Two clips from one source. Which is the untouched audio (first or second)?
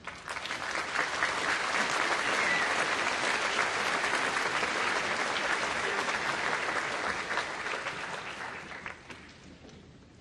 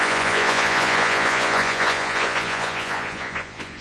first